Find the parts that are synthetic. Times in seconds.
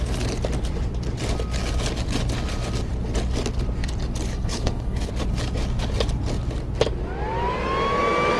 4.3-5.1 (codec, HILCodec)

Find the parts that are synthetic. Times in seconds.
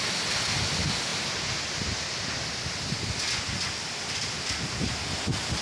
none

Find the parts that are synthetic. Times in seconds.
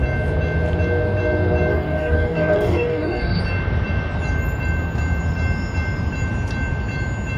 1.7-3.4 (codec, DAC)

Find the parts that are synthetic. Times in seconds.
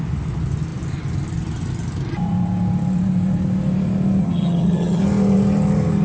4.2-5.0 (vocoder, HiFi-GAN)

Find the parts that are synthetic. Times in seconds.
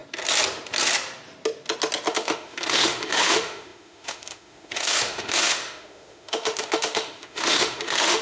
2.1-8.2 (autoencoder, DAC-VAE)